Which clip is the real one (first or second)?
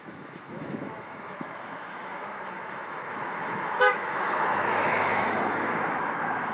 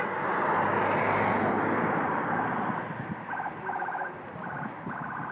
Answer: second